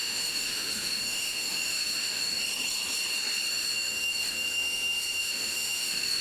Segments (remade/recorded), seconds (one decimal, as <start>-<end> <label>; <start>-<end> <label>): 0.0-2.4 remade; 2.4-3.5 recorded; 3.5-6.2 remade